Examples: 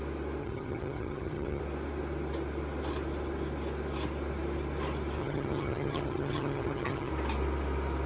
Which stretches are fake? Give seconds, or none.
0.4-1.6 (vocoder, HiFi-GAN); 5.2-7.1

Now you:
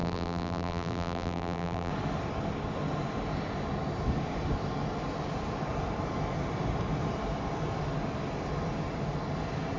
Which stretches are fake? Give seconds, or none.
0.0-1.9 (vocoder, BigVGAN v2)

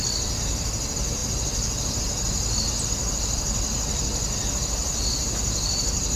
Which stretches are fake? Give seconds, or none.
4.8-6.2 (vocoder, BigVGAN v2)

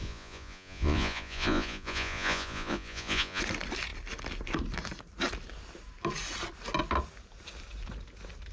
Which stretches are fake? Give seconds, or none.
0.0-3.4 (vocoder, Vocos)

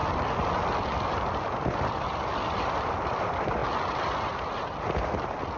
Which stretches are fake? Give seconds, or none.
1.2-3.6 (vocoder, BigVGAN v2)

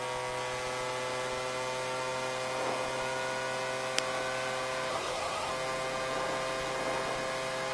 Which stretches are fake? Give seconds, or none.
4.9-5.5 (codec, SNAC)

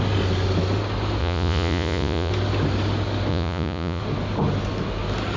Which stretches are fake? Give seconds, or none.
1.2-2.3 (vocoder, Vocos); 3.3-4.0

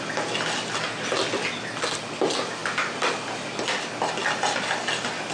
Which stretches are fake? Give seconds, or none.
2.6-3.5 (vocoder, BigVGAN v2)